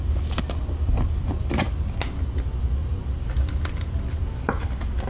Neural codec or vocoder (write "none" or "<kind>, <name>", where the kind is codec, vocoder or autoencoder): none